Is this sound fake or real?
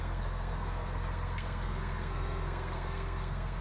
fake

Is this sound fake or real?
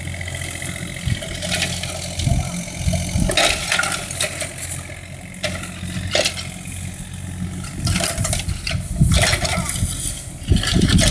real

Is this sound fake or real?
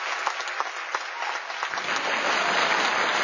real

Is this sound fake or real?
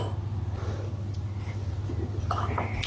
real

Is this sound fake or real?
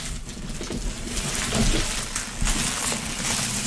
real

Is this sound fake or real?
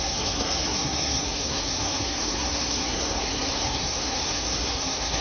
fake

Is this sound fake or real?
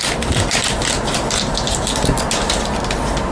real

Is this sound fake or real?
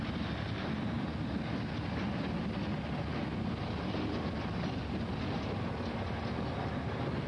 real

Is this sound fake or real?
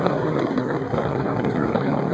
fake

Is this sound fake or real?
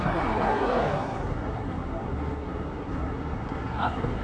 fake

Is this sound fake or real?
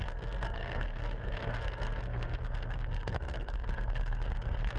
fake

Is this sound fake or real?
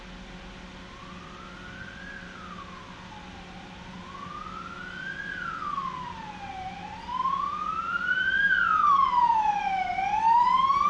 real